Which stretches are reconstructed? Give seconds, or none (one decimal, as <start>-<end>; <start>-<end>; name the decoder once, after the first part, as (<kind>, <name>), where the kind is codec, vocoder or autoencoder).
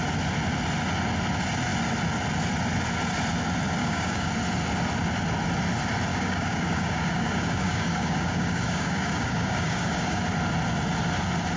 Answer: 3.8-4.3 (codec, DAC); 6.1-10.2